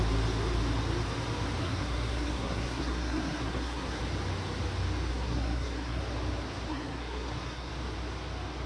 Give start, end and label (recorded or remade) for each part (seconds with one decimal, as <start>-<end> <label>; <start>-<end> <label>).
0.0-1.6 recorded; 1.6-4.0 remade; 4.0-5.1 recorded; 5.1-6.0 remade; 6.0-6.7 recorded; 6.7-7.7 remade; 7.7-8.7 recorded